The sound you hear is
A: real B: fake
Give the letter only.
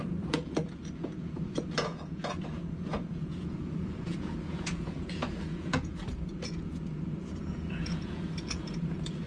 B